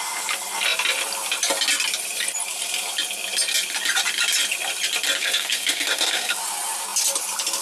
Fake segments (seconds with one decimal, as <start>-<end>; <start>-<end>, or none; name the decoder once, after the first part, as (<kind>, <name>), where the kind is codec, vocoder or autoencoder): 5.2-6.4 (codec, SNAC)